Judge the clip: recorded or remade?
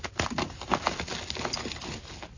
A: recorded